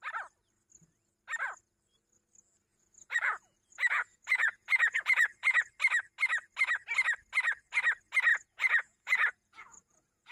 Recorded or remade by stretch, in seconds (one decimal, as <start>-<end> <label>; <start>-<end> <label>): 0.0-2.7 recorded; 2.7-5.6 remade; 5.6-8.3 recorded; 8.3-10.3 remade